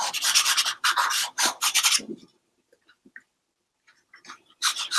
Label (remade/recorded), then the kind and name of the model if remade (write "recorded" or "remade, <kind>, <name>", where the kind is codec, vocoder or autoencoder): remade, vocoder, BigVGAN v2